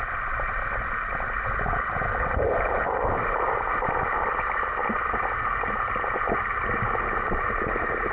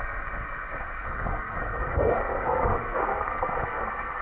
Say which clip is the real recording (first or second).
first